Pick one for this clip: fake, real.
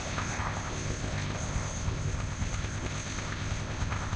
fake